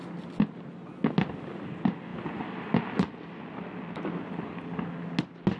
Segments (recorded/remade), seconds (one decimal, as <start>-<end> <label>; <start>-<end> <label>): 0.0-5.6 recorded